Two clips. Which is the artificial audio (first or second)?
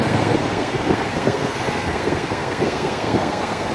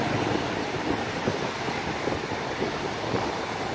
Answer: first